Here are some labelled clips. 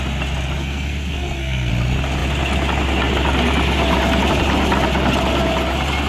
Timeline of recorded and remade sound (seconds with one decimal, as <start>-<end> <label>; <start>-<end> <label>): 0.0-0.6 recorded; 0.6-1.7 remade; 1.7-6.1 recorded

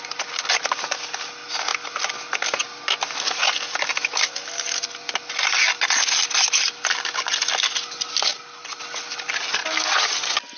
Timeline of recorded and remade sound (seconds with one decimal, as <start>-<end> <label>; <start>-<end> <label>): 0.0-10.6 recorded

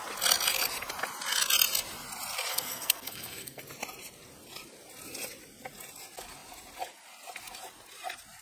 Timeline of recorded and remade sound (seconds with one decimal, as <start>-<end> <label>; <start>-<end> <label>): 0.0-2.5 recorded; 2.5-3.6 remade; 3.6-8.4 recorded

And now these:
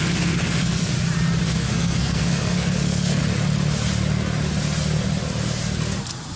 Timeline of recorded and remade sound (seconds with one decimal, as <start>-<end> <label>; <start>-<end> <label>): 0.0-0.9 remade; 0.9-1.4 recorded; 1.4-3.2 remade; 3.2-6.4 recorded